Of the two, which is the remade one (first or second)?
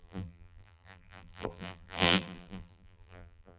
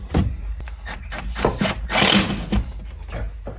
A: first